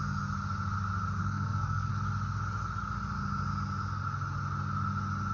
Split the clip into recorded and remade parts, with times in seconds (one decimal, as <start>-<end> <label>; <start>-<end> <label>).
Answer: 0.0-1.2 recorded; 1.2-1.9 remade; 1.9-5.3 recorded